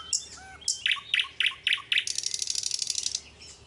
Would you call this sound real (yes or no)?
yes